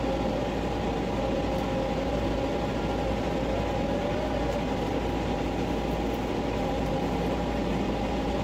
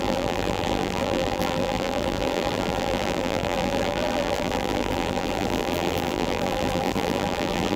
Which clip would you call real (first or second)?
first